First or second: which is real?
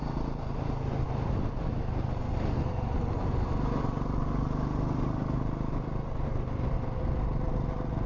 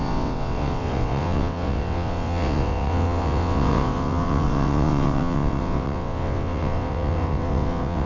first